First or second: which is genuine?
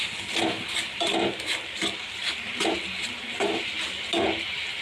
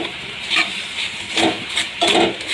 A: first